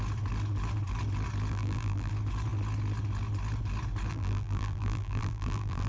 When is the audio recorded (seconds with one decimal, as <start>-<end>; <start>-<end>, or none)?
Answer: 0.0-1.5; 2.1-4.1